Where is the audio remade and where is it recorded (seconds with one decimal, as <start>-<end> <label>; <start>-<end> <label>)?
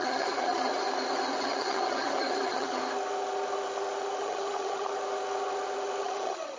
0.0-0.7 remade; 0.7-1.4 recorded; 1.4-2.8 remade; 2.8-4.2 recorded; 4.2-4.9 remade; 4.9-6.0 recorded; 6.0-6.6 remade